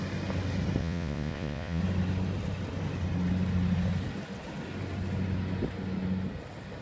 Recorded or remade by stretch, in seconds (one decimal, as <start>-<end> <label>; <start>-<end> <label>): 0.0-0.8 recorded; 0.8-1.8 remade; 1.8-6.8 recorded